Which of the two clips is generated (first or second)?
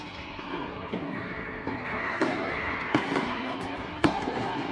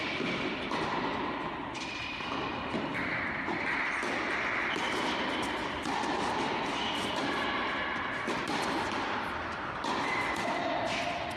first